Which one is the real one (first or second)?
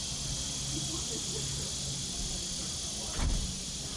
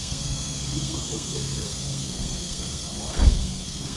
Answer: first